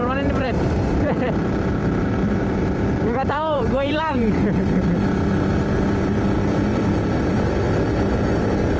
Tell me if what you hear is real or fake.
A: fake